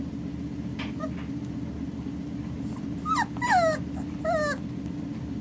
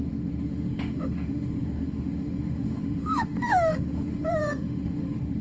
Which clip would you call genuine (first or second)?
first